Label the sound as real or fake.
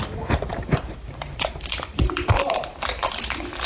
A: fake